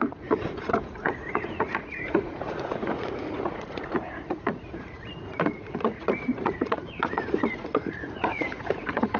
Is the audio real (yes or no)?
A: no